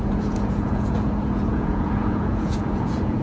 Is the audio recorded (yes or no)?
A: no